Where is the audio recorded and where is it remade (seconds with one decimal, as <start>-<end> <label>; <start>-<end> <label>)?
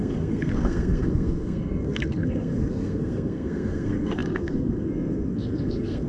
0.0-6.1 remade